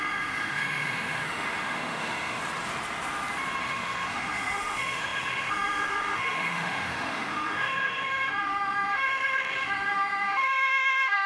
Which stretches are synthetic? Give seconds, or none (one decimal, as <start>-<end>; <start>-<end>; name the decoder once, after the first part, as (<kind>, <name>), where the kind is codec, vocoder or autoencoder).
0.0-2.4 (autoencoder, DAC-VAE); 3.6-11.3